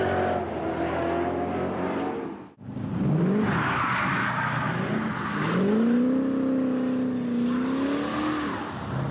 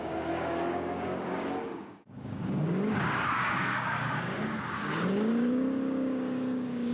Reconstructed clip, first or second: second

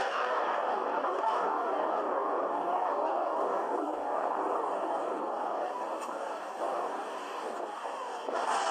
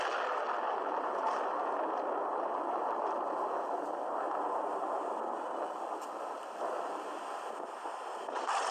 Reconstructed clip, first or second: first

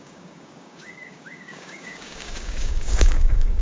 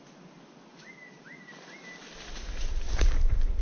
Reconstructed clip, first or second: first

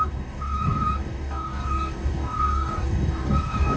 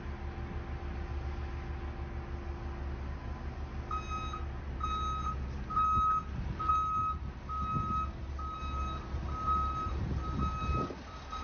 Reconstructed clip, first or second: first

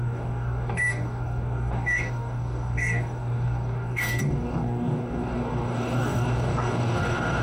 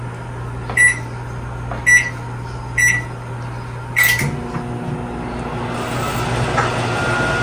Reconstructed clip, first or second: first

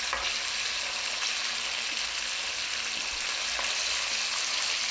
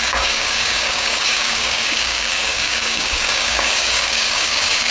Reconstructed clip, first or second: second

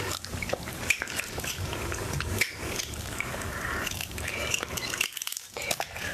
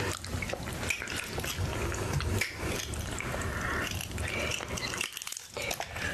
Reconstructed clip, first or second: first